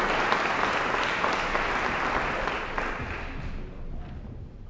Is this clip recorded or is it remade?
recorded